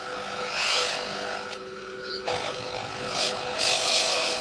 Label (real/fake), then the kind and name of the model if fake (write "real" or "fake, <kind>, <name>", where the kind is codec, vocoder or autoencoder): fake, codec, HILCodec